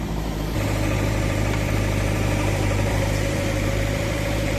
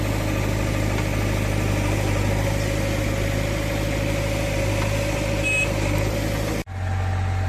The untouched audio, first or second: second